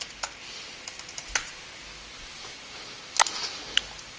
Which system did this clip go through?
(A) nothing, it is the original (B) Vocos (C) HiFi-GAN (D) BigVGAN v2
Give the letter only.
A